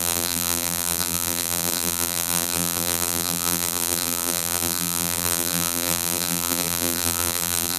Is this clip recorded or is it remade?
remade